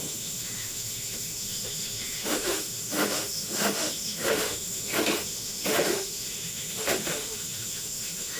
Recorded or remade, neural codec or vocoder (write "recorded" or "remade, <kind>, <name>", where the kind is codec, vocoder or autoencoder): remade, autoencoder, DAC-VAE